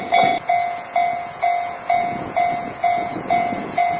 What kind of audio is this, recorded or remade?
remade